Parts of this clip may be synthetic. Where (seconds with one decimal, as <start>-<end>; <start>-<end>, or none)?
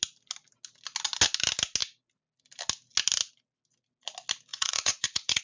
4.5-5.4